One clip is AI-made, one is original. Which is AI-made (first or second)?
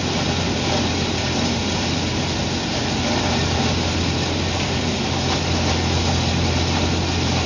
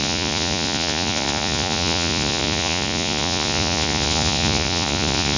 second